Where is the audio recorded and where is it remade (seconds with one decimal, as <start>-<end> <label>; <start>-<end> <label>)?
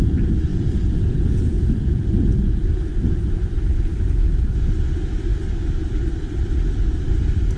0.0-0.5 recorded; 0.5-2.9 remade; 2.9-7.6 recorded